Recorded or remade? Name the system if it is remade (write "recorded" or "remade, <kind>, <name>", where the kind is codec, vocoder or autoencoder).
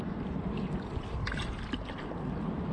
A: recorded